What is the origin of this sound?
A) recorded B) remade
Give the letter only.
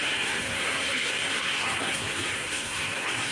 B